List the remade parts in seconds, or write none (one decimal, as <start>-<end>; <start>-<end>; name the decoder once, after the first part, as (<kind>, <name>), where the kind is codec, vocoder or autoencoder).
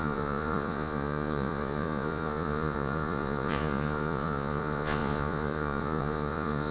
0.0-6.7 (vocoder, Vocos)